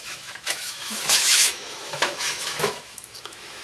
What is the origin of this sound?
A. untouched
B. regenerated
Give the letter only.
B